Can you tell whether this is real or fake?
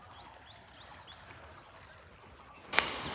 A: real